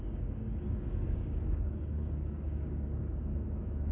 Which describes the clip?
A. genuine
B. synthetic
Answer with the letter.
B